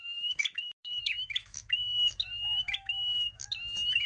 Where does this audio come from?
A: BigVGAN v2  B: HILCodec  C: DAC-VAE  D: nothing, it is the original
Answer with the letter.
C